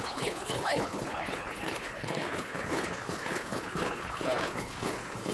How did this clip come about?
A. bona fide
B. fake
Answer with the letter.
B